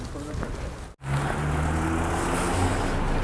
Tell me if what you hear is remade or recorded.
recorded